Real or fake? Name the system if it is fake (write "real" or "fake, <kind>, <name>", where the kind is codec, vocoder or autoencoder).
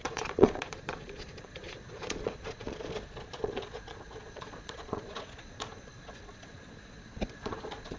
fake, vocoder, Vocos